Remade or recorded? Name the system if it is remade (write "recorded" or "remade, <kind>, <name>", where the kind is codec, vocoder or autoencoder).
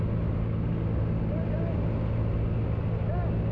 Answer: recorded